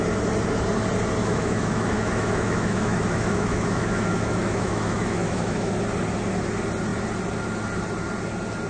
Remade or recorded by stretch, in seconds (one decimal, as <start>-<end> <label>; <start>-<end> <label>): 0.0-1.2 recorded; 1.2-5.7 remade; 5.7-8.7 recorded